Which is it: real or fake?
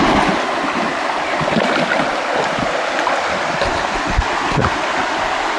real